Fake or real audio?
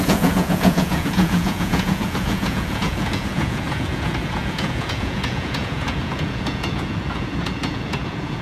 fake